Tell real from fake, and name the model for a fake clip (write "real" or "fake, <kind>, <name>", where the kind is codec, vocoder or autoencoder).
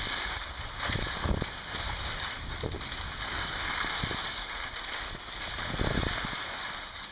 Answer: real